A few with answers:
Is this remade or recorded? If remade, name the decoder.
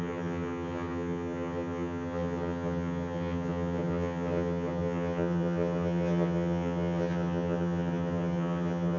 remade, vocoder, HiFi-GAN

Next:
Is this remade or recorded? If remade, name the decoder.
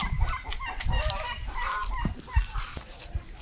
remade, vocoder, BigVGAN v2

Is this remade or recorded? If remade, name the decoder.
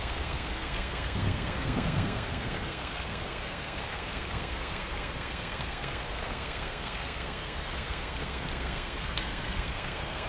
remade, codec, SNAC